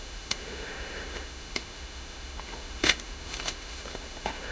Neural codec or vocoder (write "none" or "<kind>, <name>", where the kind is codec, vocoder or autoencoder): autoencoder, DAC-VAE